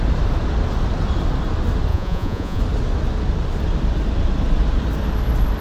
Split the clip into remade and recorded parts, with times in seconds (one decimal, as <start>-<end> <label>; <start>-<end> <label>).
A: 0.0-1.9 recorded; 1.9-2.6 remade; 2.6-5.6 recorded